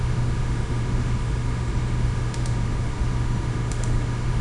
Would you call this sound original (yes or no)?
no